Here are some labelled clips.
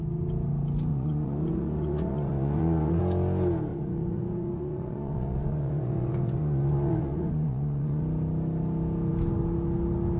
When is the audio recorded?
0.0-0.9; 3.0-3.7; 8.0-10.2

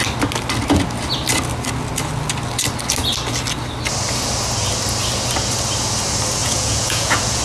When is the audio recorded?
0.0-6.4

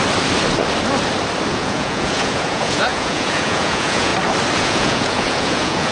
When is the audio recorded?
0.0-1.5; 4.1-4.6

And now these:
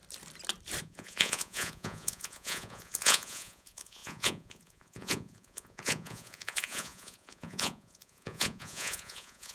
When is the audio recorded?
0.0-0.8